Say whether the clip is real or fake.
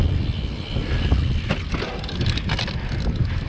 real